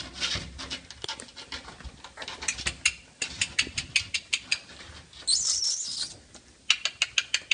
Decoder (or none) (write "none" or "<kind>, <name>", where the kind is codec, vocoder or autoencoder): none